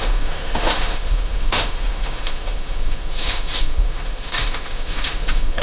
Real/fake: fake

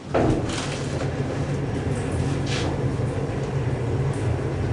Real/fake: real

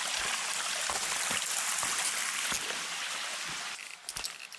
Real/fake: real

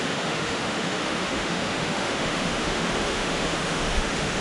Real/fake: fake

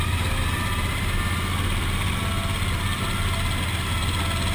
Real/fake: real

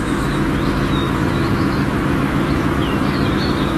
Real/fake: fake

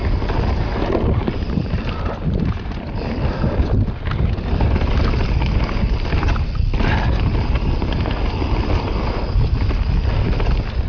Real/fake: real